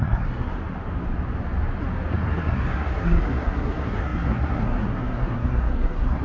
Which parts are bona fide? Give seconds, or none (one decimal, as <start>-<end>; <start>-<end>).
0.6-2.1